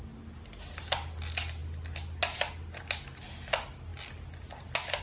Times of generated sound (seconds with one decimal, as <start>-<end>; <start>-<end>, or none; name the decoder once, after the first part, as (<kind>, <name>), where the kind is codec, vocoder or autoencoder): none